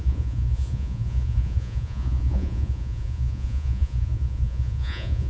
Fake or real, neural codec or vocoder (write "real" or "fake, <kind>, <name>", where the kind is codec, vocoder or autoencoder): fake, vocoder, Vocos